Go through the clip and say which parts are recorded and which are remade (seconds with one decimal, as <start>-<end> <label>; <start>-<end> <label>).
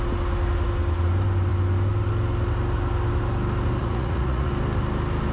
0.0-3.8 recorded; 3.8-4.5 remade; 4.5-5.3 recorded